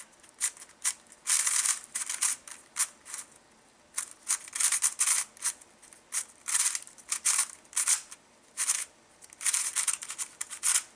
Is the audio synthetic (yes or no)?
no